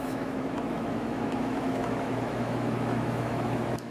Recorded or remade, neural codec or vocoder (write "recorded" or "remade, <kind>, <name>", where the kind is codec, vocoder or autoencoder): remade, autoencoder, DAC-VAE